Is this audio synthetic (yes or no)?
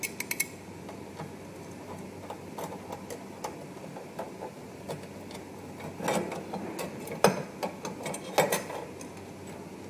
no